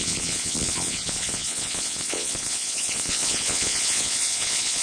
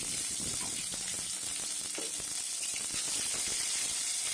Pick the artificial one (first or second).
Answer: first